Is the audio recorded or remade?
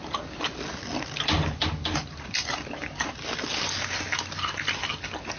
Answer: recorded